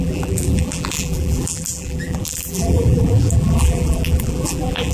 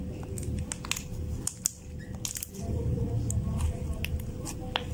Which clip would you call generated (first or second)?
first